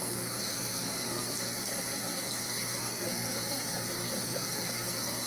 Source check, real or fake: fake